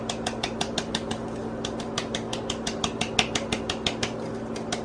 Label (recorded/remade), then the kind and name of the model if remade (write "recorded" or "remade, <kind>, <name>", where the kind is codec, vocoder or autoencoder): recorded